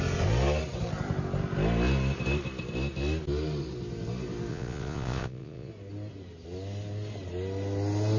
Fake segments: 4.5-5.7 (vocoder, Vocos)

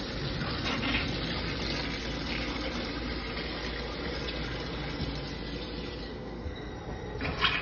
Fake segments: 6.1-6.7 (codec, SNAC)

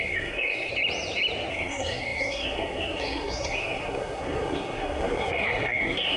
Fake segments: 0.0-0.7 (codec, SNAC); 1.5-6.2